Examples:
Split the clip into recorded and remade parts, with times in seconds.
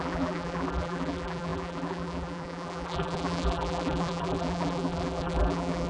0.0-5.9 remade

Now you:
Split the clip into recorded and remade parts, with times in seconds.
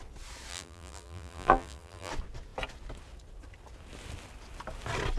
0.0-0.5 recorded; 0.5-2.1 remade; 2.1-5.2 recorded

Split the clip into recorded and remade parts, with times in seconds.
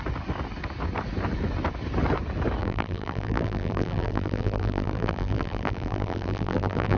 0.0-2.6 recorded; 2.6-7.0 remade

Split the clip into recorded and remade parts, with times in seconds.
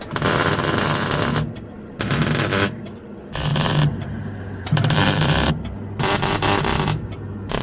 0.0-3.5 recorded; 3.5-5.5 remade; 5.5-7.6 recorded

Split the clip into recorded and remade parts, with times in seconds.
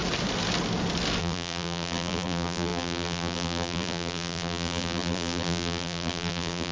0.0-1.2 recorded; 1.2-6.7 remade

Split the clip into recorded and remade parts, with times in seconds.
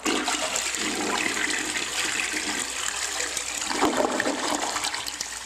0.0-1.9 recorded; 1.9-5.5 remade